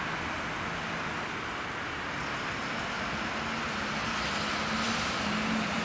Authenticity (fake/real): real